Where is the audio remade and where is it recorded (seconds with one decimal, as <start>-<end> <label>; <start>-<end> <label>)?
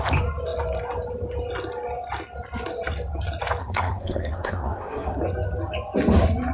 0.0-3.6 recorded; 3.6-5.2 remade; 5.2-6.5 recorded